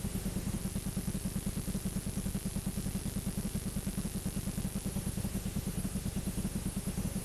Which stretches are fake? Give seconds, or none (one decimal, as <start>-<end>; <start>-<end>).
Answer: 0.0-0.6; 4.9-7.2